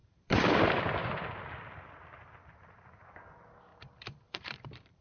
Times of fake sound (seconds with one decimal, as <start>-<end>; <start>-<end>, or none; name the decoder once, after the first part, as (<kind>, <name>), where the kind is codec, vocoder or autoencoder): 0.0-0.7 (vocoder, BigVGAN v2); 3.7-5.0